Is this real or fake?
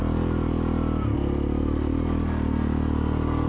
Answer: real